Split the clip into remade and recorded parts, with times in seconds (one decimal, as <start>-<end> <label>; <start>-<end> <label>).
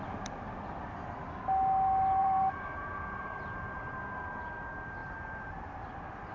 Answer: 0.0-2.2 recorded; 2.2-4.0 remade; 4.0-5.0 recorded; 5.0-5.8 remade; 5.8-6.3 recorded